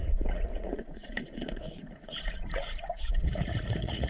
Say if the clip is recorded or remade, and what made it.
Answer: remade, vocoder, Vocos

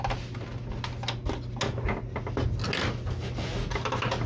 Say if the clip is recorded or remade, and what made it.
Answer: recorded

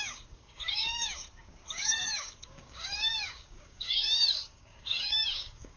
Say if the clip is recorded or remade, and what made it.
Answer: remade, codec, DAC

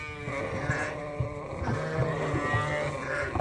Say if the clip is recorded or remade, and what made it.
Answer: recorded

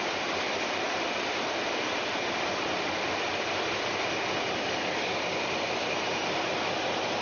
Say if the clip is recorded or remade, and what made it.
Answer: recorded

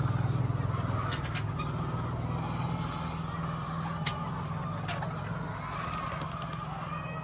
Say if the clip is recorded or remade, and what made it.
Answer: recorded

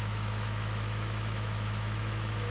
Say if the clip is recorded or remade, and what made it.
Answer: remade, autoencoder, DAC-VAE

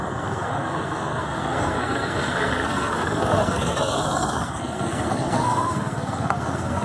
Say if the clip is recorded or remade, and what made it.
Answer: remade, codec, SNAC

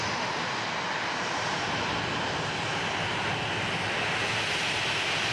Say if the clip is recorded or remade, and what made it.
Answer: recorded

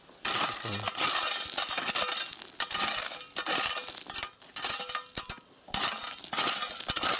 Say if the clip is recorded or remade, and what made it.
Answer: recorded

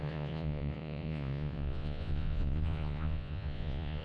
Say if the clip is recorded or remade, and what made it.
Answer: remade, vocoder, Vocos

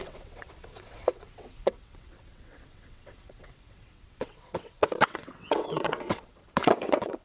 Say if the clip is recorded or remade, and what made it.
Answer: remade, vocoder, WaveNeXt